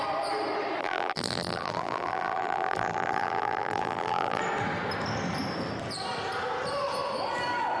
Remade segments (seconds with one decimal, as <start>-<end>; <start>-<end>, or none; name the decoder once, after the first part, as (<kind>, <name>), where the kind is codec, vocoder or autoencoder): 0.8-4.4 (vocoder, BigVGAN v2)